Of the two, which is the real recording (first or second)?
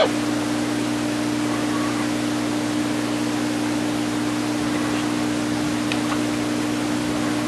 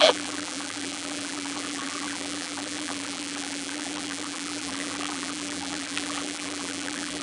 first